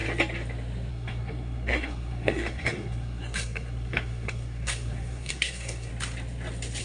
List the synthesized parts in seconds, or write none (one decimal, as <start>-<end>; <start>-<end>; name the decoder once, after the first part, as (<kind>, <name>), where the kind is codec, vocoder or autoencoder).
0.9-5.9 (codec, SNAC)